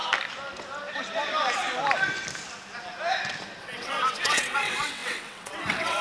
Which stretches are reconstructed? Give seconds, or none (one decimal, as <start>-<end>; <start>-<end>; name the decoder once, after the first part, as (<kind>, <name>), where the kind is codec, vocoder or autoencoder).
3.6-6.0 (vocoder, WaveNeXt)